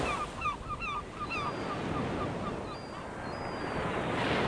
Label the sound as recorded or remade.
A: recorded